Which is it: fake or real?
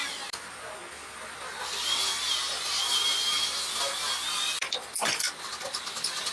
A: real